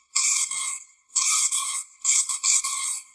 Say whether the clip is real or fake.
fake